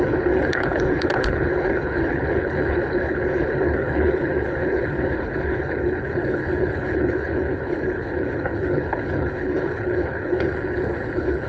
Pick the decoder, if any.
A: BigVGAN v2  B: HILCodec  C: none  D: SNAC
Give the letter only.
B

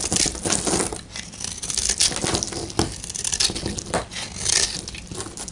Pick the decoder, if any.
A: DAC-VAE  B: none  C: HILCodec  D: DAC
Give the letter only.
B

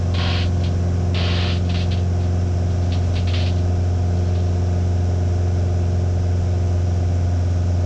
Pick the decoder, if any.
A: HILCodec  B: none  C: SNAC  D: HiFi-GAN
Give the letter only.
B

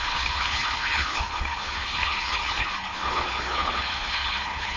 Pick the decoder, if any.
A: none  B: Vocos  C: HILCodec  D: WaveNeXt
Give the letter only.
C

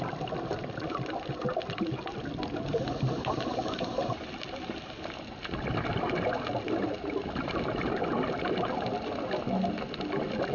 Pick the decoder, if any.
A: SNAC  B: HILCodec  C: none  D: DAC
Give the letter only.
C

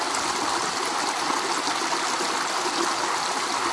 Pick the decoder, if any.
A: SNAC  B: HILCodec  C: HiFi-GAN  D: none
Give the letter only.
D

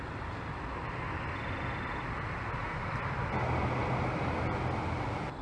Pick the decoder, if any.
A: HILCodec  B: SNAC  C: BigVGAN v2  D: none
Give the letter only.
D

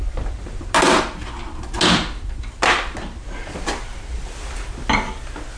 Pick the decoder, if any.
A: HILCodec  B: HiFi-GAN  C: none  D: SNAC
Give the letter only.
C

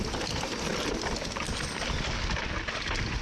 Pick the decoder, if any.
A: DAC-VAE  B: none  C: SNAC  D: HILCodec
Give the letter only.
B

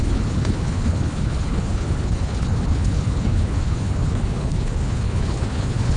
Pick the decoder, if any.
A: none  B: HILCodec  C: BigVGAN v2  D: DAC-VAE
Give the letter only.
B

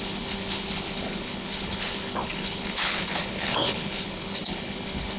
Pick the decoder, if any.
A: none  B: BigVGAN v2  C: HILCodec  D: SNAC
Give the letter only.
C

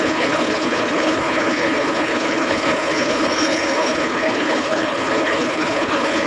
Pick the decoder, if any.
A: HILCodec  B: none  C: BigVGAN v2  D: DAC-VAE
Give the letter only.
A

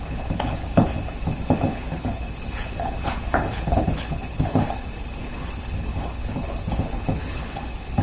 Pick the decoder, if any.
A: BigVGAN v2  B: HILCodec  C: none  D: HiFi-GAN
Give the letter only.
B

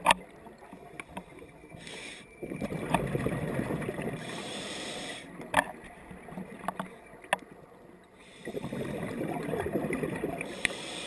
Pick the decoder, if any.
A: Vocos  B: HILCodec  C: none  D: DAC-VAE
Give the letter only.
C